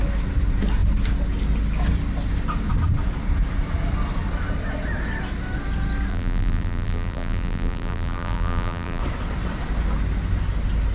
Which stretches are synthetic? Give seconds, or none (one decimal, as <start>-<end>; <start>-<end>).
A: 6.1-9.0